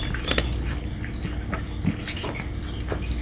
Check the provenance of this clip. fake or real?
real